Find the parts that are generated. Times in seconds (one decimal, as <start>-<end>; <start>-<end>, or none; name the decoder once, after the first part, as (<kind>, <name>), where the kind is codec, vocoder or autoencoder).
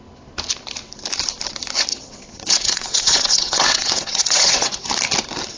1.9-4.9 (vocoder, WaveNeXt)